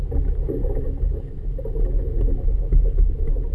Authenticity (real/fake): real